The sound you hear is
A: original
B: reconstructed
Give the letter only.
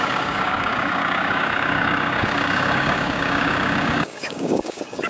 B